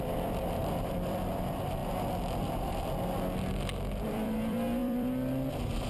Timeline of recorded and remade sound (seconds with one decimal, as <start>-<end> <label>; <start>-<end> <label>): 0.0-1.8 remade; 1.8-4.1 recorded; 4.1-5.9 remade